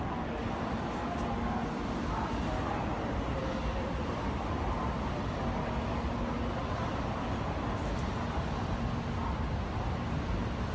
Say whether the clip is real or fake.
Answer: real